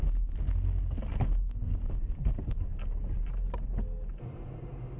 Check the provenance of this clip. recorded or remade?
recorded